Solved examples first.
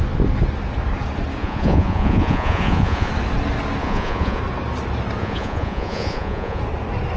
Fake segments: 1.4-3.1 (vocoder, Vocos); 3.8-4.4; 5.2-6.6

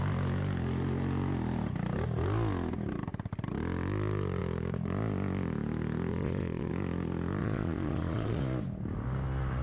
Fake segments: 6.1-6.7 (vocoder, Vocos); 7.4-8.4